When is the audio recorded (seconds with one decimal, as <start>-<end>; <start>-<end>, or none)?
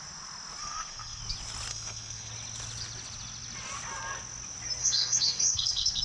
0.0-0.6; 1.2-1.7; 2.3-4.8